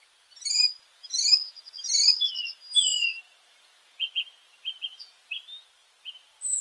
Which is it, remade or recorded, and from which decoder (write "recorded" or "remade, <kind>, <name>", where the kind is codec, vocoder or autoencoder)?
recorded